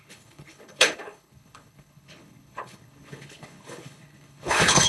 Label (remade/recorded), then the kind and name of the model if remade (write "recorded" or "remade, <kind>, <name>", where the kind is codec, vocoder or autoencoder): remade, codec, HILCodec